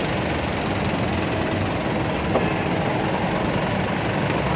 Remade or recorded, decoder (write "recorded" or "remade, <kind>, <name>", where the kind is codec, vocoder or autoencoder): remade, vocoder, BigVGAN v2